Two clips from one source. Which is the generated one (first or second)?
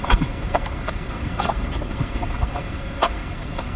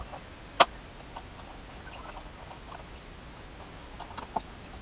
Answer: first